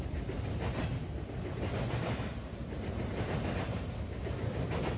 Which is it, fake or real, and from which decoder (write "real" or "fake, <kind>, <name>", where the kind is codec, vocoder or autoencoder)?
real